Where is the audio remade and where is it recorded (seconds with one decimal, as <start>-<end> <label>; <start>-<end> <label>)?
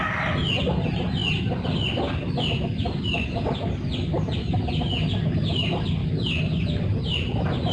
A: 0.0-7.7 recorded